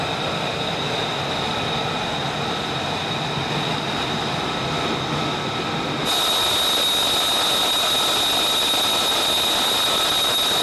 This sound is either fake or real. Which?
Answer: real